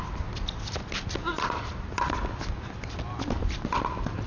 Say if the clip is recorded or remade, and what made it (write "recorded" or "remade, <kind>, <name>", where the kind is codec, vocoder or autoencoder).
recorded